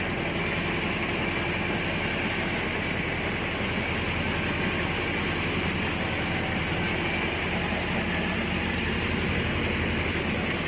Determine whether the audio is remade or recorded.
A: recorded